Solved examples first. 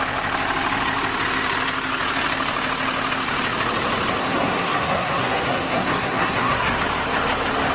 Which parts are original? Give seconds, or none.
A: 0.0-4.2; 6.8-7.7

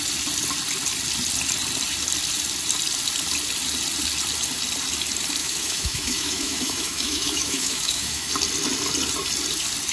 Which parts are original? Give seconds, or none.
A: 0.0-5.4; 8.3-9.9

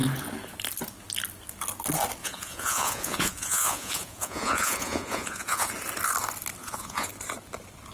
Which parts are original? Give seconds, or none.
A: 0.0-2.2; 5.7-6.6; 7.1-7.9

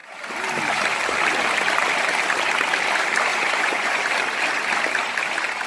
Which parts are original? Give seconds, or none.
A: 0.0-3.3; 4.0-5.7

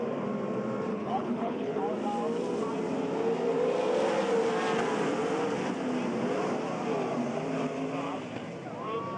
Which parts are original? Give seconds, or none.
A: 0.0-0.9; 1.8-9.2

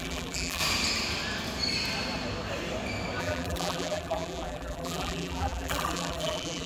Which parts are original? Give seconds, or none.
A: 0.6-3.2

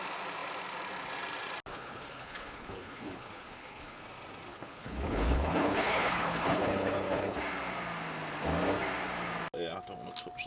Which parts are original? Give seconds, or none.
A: 0.0-1.7; 4.0-4.5; 7.4-10.5

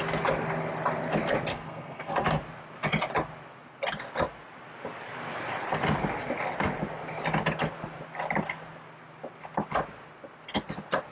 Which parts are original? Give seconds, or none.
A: 0.0-1.5; 2.4-11.1